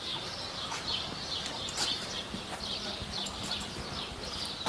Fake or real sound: fake